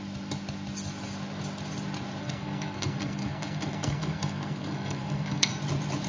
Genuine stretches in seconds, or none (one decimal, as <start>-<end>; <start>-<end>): 0.0-2.2; 5.5-6.1